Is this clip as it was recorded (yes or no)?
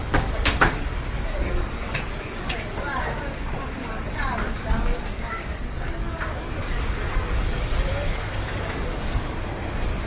no